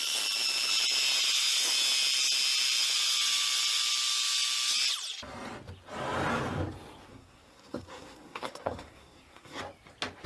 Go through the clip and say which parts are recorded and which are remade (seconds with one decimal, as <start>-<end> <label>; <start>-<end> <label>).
0.0-7.1 recorded; 7.1-9.6 remade; 9.6-10.3 recorded